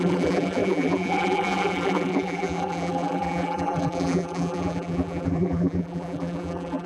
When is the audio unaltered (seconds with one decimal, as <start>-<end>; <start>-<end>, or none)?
none